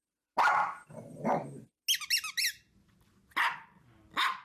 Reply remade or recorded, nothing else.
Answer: recorded